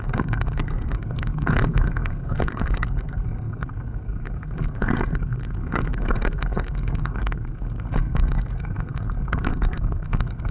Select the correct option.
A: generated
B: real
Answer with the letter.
A